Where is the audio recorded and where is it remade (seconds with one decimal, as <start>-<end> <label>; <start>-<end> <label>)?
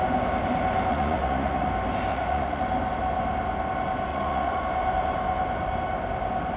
0.0-0.9 recorded; 0.9-1.7 remade; 1.7-2.1 recorded; 2.1-2.6 remade; 2.6-4.1 recorded; 4.1-4.6 remade; 4.6-6.6 recorded